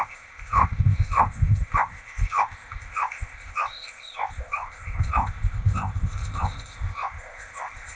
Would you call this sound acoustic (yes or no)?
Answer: no